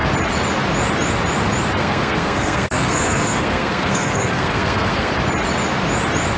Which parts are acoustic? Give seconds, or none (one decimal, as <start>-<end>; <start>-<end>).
0.0-1.8; 5.1-6.4